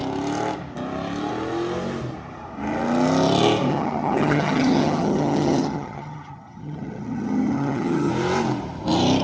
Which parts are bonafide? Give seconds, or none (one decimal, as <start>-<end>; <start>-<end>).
0.0-3.7; 8.1-9.2